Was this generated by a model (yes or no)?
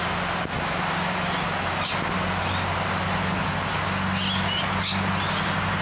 no